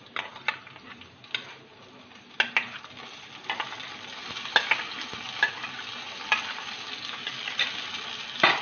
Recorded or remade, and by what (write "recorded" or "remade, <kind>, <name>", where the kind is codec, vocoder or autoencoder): recorded